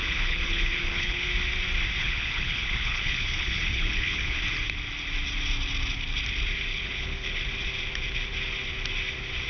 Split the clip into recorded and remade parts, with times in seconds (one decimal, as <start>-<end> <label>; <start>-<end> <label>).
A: 0.0-1.3 remade; 1.3-2.0 recorded; 2.0-4.4 remade; 4.4-6.7 recorded; 6.7-7.4 remade; 7.4-9.5 recorded